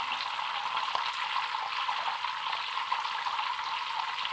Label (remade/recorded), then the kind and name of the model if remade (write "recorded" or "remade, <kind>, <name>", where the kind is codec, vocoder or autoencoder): recorded